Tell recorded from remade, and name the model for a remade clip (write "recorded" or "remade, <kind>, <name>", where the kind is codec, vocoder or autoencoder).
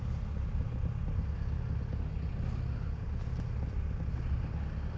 recorded